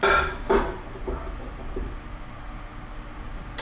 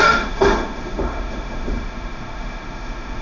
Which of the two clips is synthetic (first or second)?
second